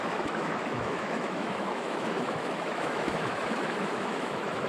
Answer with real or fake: fake